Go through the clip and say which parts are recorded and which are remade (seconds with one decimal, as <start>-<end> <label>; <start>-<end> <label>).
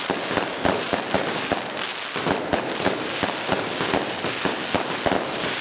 0.0-5.6 recorded